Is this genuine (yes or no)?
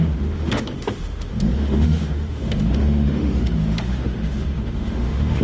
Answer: no